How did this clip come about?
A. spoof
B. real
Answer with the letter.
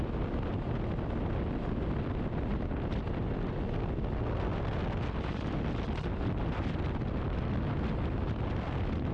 B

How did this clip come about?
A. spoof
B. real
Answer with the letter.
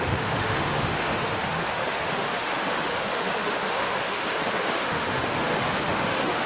A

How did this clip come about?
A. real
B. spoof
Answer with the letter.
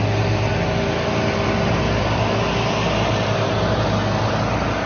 A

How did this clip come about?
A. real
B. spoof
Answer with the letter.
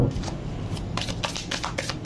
A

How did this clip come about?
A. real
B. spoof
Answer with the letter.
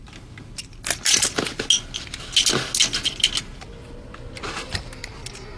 A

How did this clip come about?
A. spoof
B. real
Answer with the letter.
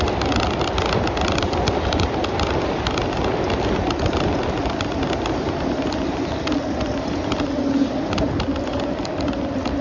B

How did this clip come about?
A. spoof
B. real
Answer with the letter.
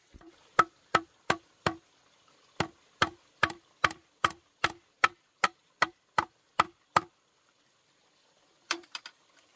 B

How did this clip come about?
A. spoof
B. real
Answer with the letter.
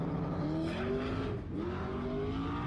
B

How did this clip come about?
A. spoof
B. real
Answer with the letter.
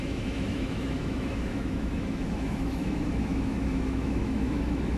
A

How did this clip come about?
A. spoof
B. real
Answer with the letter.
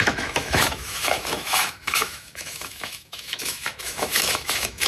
A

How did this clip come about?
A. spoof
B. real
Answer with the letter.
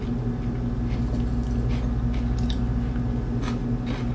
B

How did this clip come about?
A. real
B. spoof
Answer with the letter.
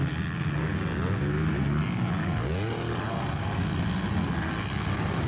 A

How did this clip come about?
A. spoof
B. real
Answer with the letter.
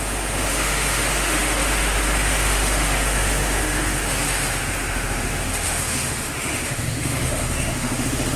A